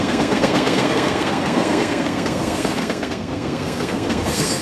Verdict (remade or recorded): remade